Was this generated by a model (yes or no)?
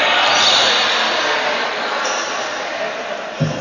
no